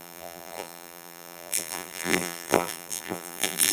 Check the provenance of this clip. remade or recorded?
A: remade